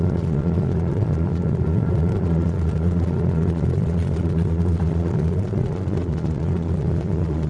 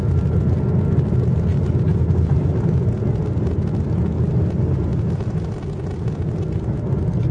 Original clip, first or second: second